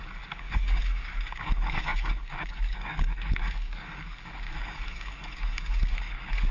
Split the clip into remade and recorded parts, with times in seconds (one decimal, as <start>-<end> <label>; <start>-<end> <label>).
0.0-6.5 remade